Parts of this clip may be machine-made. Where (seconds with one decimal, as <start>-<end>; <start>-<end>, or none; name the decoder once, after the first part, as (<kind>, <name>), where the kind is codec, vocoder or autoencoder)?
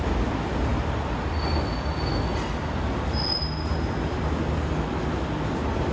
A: none